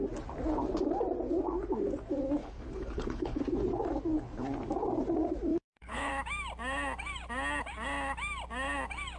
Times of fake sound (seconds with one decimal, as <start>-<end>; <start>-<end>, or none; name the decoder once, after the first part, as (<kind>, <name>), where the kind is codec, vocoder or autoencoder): 2.4-3.4 (codec, HILCodec); 5.5-6.1